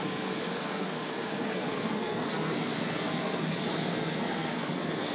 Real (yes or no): no